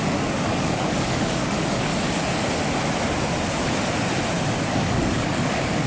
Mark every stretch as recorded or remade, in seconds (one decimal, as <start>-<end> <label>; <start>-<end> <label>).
0.0-1.9 remade; 1.9-4.7 recorded; 4.7-5.9 remade